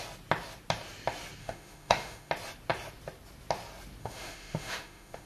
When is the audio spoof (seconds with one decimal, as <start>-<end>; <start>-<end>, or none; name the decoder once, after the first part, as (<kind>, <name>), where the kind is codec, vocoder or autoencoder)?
1.4-2.3 (autoencoder, DAC-VAE); 4.0-5.3